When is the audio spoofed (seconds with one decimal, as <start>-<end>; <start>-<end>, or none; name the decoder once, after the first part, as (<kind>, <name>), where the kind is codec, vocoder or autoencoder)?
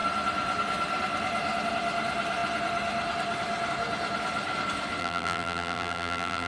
5.0-6.5 (vocoder, BigVGAN v2)